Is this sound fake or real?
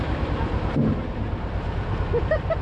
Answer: real